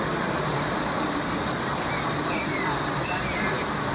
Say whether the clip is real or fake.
real